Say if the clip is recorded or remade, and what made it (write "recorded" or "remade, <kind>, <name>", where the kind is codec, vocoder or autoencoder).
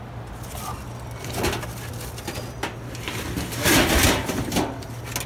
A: recorded